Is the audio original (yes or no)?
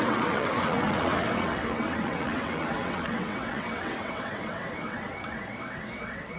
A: no